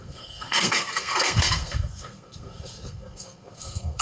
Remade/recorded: remade